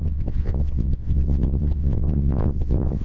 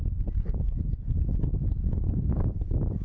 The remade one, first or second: first